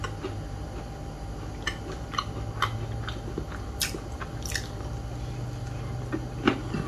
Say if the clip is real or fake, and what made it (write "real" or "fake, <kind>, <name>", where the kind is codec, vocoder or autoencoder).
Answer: real